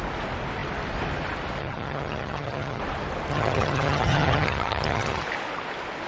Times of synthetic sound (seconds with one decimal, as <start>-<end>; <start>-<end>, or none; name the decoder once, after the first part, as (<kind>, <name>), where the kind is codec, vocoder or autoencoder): 1.6-2.8 (vocoder, HiFi-GAN); 3.3-5.2